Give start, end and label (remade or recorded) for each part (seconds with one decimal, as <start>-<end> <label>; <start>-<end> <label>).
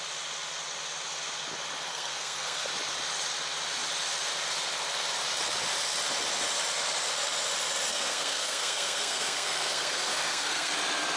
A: 0.0-1.9 recorded; 1.9-2.7 remade; 2.7-7.9 recorded; 7.9-10.7 remade; 10.7-11.2 recorded